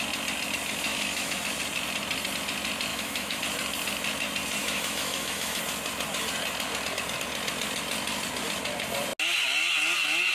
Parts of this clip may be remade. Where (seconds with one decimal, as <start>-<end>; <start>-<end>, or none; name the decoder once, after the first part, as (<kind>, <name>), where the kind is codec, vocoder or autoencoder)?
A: 0.9-1.4 (autoencoder, DAC-VAE); 2.9-3.4; 4.6-5.6